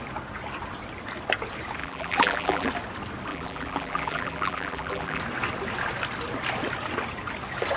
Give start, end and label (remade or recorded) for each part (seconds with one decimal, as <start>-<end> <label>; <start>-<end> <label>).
0.0-1.8 recorded; 1.8-2.7 remade; 2.7-3.3 recorded; 3.3-5.2 remade; 5.2-7.8 recorded